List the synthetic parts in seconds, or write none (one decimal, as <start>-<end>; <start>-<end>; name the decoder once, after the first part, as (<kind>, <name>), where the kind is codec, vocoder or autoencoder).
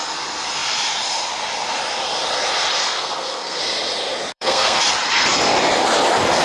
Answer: 2.8-3.6 (codec, SNAC); 4.3-4.8